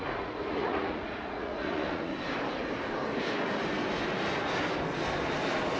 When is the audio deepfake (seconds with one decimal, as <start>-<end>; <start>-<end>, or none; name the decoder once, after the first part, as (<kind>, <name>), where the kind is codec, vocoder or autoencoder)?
0.0-2.1 (vocoder, Vocos)